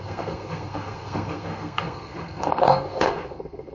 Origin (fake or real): fake